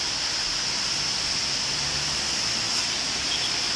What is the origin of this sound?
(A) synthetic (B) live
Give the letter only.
A